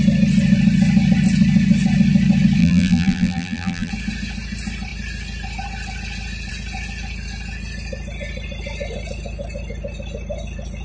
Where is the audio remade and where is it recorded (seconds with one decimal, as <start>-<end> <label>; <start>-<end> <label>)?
0.0-2.6 recorded; 2.6-3.9 remade; 3.9-10.8 recorded